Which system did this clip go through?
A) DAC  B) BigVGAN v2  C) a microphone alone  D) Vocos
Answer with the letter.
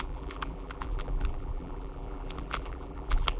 B